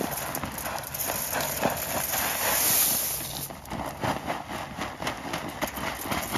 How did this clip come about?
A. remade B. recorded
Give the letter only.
B